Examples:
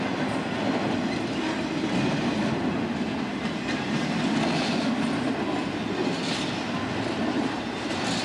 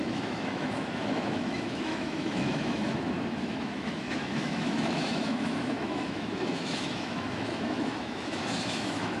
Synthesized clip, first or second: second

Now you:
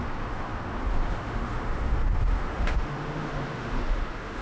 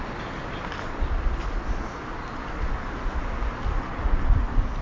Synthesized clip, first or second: first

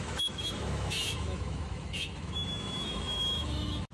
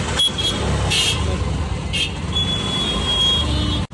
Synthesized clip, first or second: first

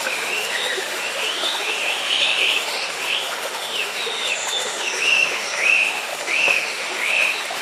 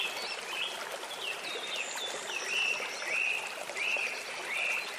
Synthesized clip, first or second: first